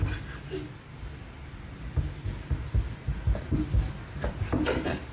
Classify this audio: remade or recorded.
recorded